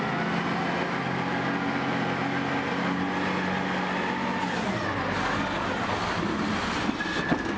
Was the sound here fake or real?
real